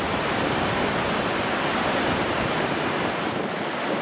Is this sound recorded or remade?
remade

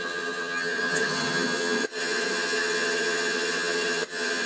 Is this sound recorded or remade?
remade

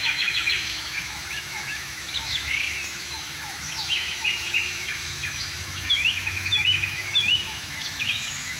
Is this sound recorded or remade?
remade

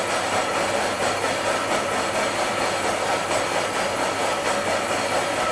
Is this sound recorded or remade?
recorded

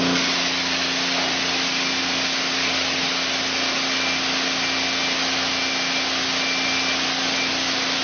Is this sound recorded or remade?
recorded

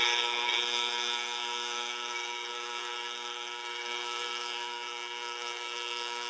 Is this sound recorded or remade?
remade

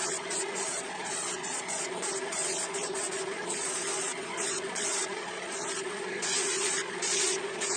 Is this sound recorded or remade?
remade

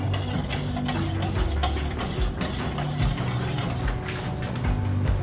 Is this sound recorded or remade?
recorded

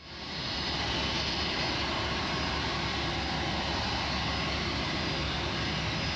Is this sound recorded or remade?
recorded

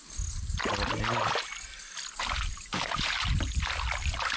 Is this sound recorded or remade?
recorded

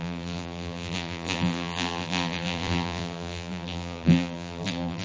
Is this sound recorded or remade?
remade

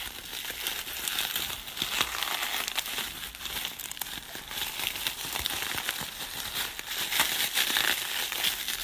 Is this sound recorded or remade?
recorded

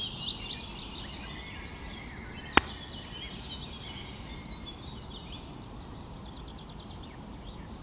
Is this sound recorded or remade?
recorded